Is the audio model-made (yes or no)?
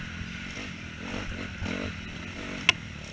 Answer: no